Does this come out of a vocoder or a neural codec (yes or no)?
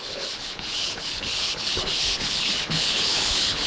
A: yes